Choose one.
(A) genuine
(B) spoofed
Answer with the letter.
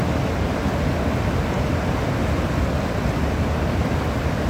A